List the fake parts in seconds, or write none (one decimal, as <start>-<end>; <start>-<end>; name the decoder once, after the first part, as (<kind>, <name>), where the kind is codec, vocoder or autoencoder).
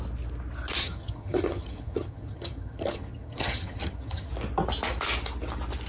0.8-4.3 (vocoder, HiFi-GAN)